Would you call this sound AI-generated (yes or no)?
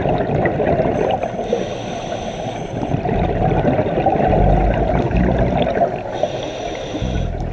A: no